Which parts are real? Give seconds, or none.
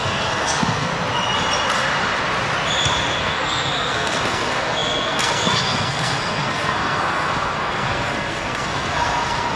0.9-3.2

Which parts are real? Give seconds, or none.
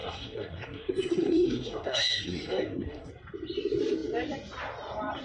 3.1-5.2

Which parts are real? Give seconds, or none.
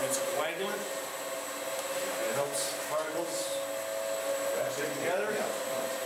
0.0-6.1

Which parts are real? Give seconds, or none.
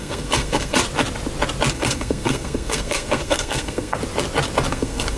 0.8-1.7; 4.0-4.7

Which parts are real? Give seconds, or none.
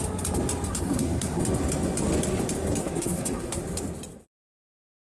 0.0-0.7; 1.4-2.8; 3.6-5.0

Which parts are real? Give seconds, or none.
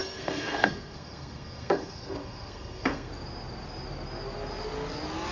3.1-5.3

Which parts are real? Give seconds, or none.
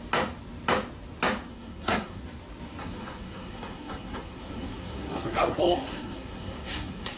0.0-1.5; 2.2-2.8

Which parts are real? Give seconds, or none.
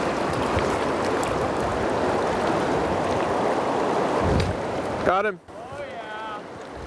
0.0-6.9